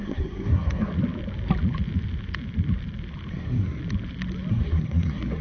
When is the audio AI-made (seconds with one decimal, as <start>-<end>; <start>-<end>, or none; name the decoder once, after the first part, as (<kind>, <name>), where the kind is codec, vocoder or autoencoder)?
0.0-0.9 (codec, SNAC); 3.3-3.8; 4.5-5.4